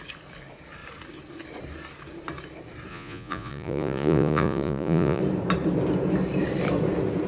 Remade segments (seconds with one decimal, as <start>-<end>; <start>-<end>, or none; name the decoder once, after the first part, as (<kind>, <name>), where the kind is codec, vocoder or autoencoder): 2.9-5.2 (vocoder, Vocos)